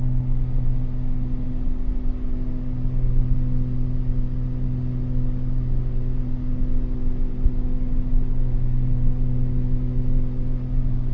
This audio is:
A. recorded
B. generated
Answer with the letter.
A